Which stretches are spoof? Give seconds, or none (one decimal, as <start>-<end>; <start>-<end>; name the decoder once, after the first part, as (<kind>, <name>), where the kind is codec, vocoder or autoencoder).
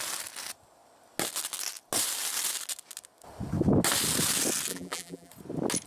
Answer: 4.7-5.3 (vocoder, BigVGAN v2)